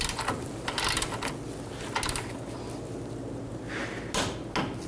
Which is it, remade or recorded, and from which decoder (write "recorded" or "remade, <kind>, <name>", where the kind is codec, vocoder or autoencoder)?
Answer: recorded